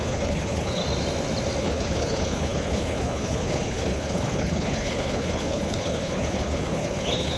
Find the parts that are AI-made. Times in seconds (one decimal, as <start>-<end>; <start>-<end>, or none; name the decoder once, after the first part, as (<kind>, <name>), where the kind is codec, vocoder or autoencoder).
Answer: 0.0-0.8 (codec, HILCodec); 1.6-7.4